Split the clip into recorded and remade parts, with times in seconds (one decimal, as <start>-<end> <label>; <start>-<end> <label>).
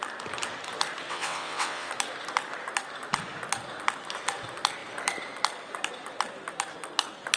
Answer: 0.0-1.1 recorded; 1.1-1.9 remade; 1.9-7.4 recorded